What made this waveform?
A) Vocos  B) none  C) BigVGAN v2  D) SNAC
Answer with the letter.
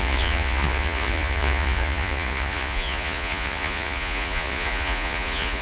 A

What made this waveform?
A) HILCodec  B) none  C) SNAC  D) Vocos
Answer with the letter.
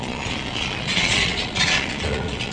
D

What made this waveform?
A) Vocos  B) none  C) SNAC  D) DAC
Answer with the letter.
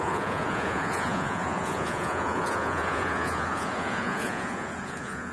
A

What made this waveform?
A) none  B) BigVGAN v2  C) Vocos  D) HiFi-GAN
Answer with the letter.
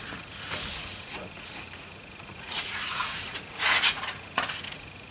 C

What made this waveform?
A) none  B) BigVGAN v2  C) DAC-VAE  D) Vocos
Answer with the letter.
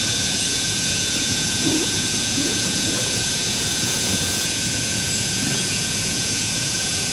D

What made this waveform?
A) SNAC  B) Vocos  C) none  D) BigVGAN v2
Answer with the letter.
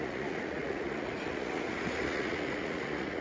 B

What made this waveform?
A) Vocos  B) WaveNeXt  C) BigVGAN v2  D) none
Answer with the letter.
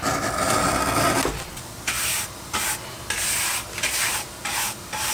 D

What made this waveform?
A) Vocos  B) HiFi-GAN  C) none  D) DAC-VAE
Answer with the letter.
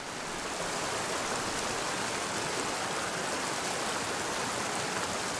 C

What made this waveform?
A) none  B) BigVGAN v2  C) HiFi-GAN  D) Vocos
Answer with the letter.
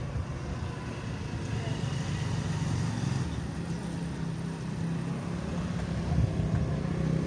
A